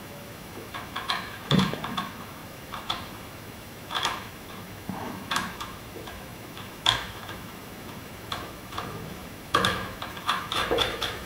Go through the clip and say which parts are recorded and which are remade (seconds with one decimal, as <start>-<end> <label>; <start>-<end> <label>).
0.0-11.3 remade